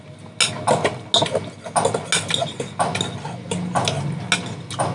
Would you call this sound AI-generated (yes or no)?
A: no